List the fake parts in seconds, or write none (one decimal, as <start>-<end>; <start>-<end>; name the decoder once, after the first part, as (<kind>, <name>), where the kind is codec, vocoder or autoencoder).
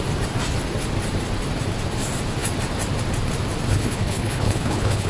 3.7-5.1 (codec, HILCodec)